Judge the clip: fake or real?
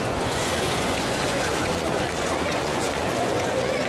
fake